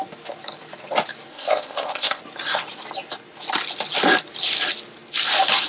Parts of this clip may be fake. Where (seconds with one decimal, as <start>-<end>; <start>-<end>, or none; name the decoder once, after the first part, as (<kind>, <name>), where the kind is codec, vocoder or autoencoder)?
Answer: 1.3-2.2 (codec, ZipCodec)